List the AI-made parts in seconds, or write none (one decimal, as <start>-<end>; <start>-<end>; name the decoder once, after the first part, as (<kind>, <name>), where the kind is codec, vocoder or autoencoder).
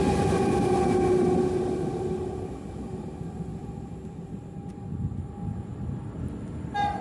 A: 3.5-4.8 (vocoder, BigVGAN v2)